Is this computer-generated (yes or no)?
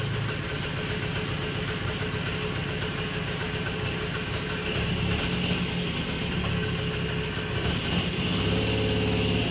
no